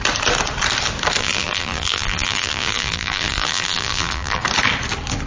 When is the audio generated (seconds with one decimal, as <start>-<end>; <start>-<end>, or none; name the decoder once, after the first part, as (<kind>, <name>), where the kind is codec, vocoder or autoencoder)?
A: 1.2-4.4 (vocoder, BigVGAN v2)

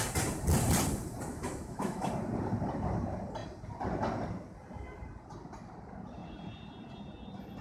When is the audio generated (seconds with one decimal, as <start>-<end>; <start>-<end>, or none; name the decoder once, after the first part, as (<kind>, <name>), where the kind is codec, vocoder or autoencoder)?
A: 1.3-2.1 (autoencoder, DAC-VAE)

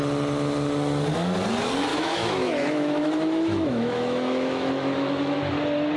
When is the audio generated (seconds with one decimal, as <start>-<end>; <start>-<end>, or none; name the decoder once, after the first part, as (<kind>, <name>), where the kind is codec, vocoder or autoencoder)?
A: 1.9-5.5 (autoencoder, DAC-VAE)

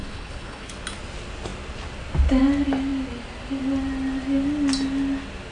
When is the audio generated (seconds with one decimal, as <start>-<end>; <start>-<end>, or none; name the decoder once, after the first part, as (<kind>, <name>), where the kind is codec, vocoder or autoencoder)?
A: 0.0-0.7 (codec, HILCodec)

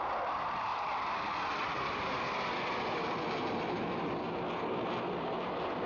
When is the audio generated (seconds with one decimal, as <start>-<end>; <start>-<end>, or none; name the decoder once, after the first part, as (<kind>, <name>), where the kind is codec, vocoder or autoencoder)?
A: none